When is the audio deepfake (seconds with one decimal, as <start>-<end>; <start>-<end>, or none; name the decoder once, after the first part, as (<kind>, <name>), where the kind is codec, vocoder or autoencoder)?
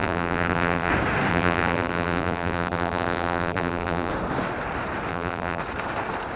0.0-0.9 (vocoder, BigVGAN v2); 1.3-4.1; 5.1-5.6